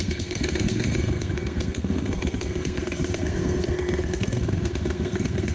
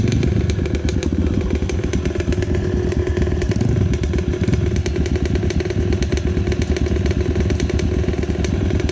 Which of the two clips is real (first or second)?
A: second